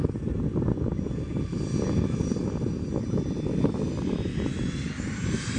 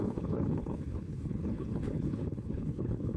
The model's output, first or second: second